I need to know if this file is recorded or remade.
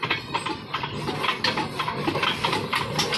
recorded